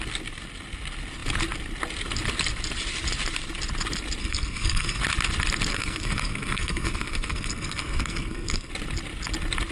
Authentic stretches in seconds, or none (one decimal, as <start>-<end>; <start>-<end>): 0.0-4.2; 5.0-5.7; 8.7-9.7